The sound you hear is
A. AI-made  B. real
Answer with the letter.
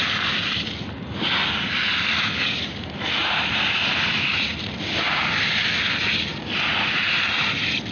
B